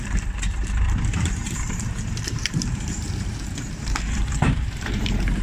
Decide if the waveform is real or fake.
fake